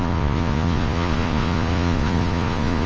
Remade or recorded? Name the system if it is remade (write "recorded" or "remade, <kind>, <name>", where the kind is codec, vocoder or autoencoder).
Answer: remade, vocoder, Vocos